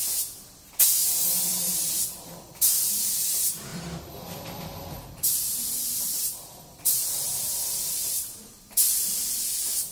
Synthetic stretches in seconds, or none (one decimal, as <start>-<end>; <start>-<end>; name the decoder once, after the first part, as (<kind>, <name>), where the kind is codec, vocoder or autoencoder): 1.0-2.9 (vocoder, BigVGAN v2); 3.7-7.4; 8.3-9.9